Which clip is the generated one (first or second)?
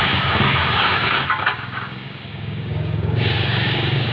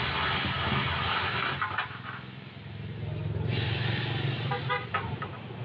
first